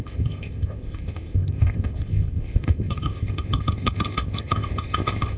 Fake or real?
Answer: fake